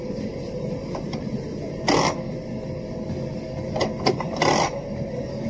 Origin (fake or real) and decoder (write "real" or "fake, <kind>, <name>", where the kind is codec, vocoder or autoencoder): real